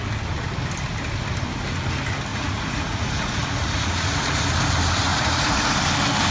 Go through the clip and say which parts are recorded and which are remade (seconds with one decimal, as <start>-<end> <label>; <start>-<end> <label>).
0.0-2.3 recorded; 2.3-4.4 remade; 4.4-5.1 recorded; 5.1-5.7 remade; 5.7-6.3 recorded